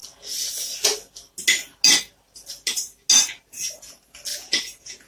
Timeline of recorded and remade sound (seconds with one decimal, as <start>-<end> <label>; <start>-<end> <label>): 0.0-4.3 recorded; 4.3-5.1 remade